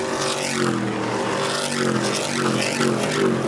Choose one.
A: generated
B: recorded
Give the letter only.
B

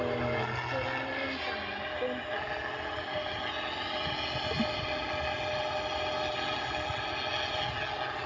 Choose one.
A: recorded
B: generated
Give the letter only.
A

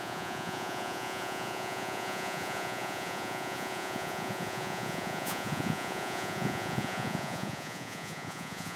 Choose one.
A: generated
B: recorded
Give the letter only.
A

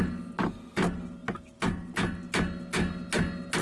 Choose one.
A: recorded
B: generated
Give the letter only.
A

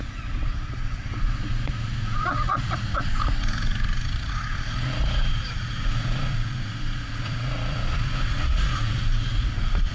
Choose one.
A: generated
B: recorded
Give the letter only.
A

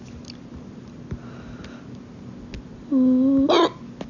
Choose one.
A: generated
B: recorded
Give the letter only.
B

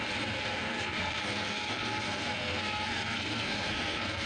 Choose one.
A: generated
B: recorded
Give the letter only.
A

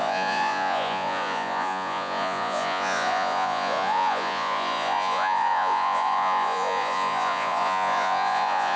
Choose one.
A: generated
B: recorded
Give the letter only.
A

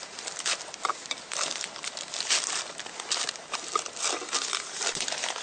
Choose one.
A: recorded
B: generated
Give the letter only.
A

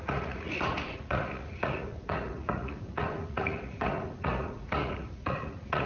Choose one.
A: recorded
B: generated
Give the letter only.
B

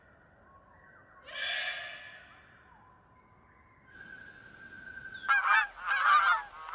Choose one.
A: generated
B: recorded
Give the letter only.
B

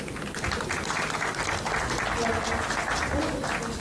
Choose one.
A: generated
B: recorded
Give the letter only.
B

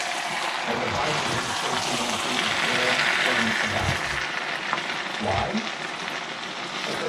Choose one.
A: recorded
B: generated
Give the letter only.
B